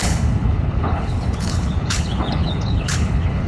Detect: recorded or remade remade